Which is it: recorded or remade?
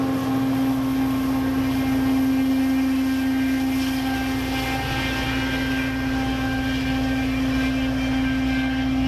recorded